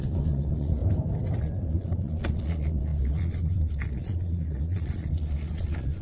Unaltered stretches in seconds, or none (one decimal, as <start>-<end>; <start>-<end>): 0.8-1.4